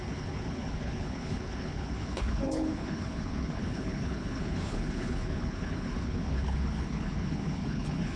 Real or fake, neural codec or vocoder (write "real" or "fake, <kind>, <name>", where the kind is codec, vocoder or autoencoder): fake, codec, HILCodec